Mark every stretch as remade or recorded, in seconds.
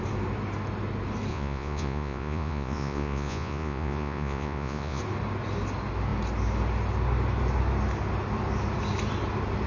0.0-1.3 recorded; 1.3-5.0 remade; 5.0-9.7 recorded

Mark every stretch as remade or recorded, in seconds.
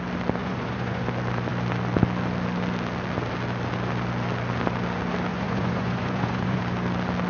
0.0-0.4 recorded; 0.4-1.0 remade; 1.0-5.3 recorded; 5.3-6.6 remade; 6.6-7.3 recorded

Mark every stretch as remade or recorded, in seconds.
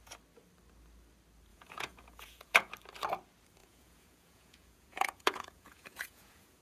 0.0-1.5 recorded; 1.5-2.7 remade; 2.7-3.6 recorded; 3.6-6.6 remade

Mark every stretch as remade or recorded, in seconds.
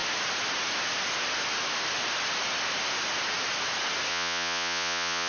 0.0-4.1 recorded; 4.1-5.3 remade